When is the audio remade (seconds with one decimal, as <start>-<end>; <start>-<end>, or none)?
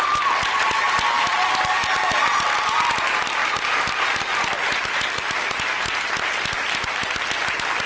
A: 3.4-7.9